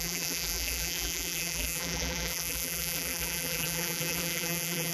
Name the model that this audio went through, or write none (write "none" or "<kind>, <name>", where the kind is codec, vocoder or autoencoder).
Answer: vocoder, BigVGAN v2